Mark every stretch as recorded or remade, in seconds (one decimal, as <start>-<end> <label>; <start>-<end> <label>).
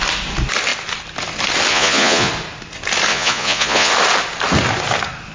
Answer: 0.0-1.7 recorded; 1.7-2.3 remade; 2.3-3.1 recorded; 3.1-3.9 remade; 3.9-5.3 recorded